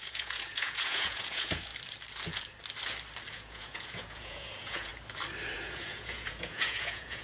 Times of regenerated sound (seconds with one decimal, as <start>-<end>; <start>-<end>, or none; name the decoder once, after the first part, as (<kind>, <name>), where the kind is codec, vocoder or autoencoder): 0.0-1.7 (vocoder, Vocos); 3.3-4.9; 5.5-7.2